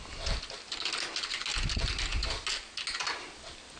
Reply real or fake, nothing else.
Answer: real